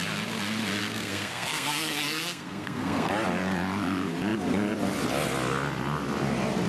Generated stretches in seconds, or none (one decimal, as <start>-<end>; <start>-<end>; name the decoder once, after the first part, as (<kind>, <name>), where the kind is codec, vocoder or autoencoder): 0.8-3.1 (codec, SNAC)